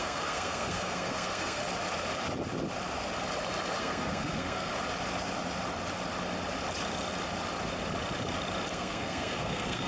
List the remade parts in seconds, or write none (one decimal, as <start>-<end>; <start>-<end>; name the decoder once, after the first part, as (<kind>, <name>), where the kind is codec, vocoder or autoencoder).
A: 0.0-1.6 (codec, SNAC); 3.8-4.7; 8.7-9.9